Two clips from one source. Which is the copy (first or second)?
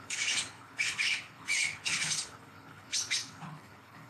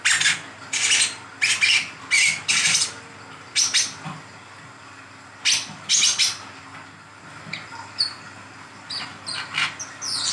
first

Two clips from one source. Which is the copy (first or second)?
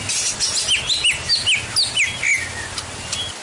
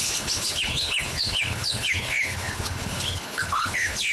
second